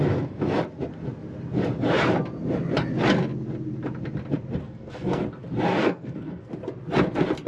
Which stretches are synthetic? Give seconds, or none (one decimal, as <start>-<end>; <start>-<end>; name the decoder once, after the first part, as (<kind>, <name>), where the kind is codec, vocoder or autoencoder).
4.6-5.2 (codec, SNAC); 5.8-6.5